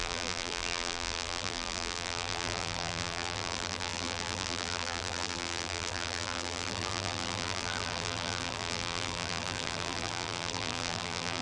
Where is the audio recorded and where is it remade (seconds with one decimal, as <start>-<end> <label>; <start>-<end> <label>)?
0.0-11.4 remade